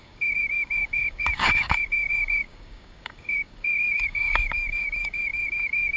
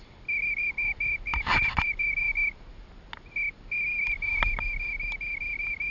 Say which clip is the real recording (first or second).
second